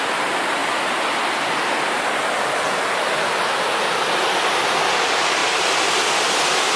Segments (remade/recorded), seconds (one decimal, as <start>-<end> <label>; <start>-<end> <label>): 0.0-6.8 recorded